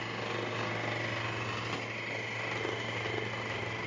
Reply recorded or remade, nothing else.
recorded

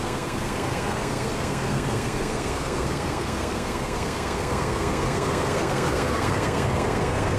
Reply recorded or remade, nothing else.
remade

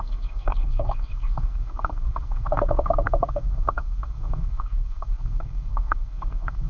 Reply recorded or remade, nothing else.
remade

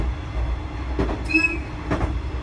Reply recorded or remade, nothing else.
recorded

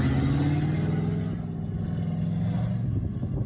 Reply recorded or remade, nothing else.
recorded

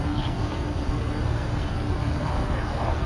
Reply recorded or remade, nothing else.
remade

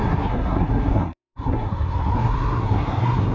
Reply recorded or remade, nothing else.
remade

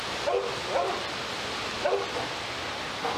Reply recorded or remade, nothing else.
recorded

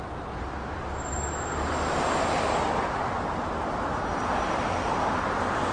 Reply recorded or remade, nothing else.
recorded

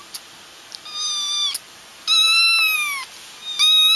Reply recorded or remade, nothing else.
recorded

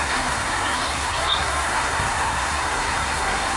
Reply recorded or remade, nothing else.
remade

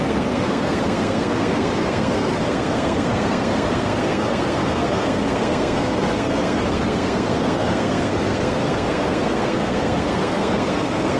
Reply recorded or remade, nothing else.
remade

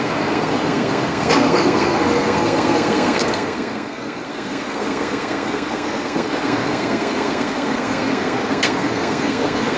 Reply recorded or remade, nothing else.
remade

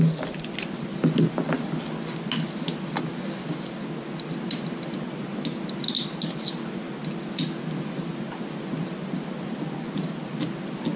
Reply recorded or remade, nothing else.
recorded